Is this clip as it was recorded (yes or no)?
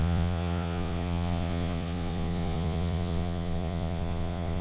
no